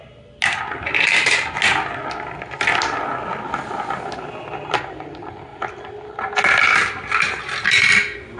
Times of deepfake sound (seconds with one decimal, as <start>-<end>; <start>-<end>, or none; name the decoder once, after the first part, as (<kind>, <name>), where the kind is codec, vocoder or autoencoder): none